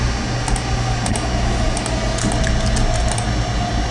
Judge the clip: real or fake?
real